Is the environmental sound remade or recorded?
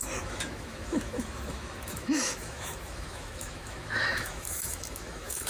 remade